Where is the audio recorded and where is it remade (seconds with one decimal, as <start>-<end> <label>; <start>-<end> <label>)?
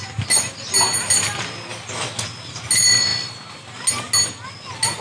0.0-5.0 recorded